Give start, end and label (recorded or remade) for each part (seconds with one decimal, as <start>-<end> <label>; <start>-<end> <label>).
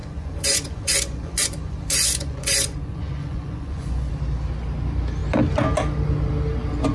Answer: 0.0-4.1 remade; 4.1-6.9 recorded